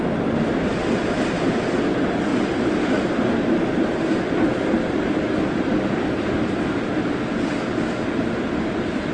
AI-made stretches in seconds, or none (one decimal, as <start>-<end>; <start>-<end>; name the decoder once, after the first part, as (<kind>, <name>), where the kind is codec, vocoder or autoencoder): none